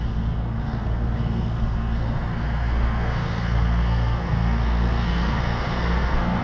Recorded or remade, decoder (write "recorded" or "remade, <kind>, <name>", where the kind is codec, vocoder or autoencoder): remade, codec, SNAC